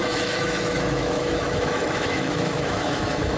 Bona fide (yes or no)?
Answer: no